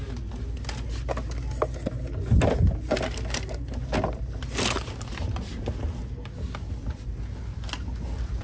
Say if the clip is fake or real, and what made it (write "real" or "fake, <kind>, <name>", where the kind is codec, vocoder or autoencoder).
real